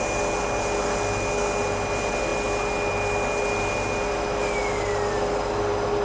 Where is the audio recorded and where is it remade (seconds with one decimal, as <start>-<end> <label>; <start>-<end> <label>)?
0.0-6.0 recorded